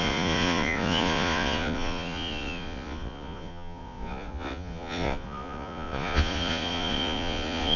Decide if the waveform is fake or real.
fake